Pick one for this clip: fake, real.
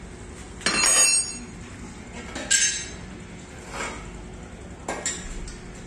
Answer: real